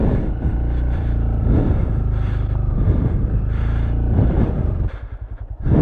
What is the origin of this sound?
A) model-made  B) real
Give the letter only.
A